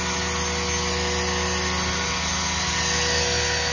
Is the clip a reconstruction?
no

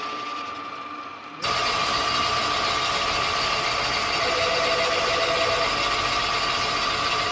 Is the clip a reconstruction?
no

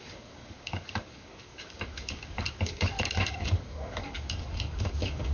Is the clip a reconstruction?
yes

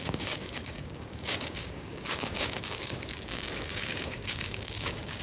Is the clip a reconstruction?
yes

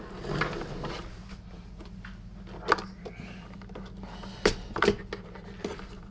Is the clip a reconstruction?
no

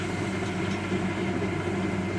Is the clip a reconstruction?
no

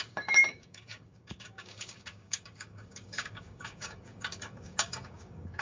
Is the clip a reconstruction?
yes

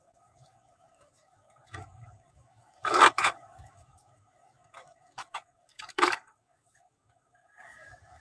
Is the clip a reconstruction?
yes